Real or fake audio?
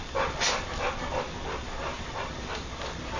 real